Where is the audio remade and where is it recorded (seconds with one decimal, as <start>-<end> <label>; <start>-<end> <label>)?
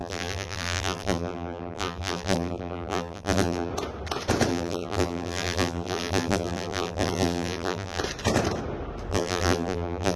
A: 0.0-3.7 remade; 3.7-4.5 recorded; 4.5-8.0 remade; 8.0-9.1 recorded; 9.1-10.2 remade